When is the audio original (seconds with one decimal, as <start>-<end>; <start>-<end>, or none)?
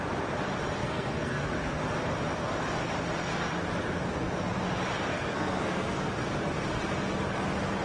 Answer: 0.0-0.8; 1.5-5.1; 6.1-7.8